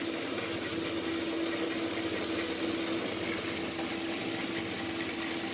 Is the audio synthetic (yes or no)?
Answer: no